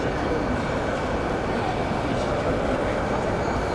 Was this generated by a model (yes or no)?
no